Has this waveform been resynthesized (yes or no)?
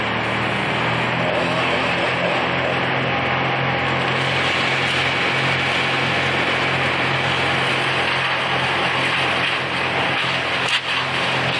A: no